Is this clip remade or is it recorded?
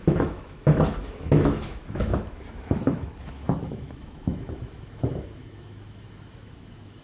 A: remade